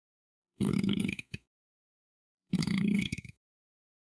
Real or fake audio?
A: fake